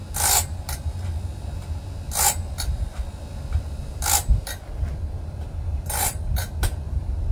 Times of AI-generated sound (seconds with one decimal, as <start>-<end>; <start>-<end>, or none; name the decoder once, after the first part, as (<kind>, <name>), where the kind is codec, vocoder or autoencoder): none